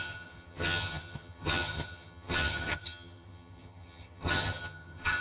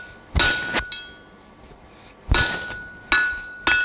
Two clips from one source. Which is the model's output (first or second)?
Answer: first